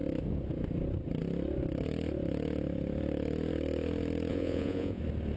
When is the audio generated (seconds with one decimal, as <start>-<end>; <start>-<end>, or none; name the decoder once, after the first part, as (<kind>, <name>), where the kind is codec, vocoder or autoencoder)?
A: 4.3-5.0 (vocoder, Vocos)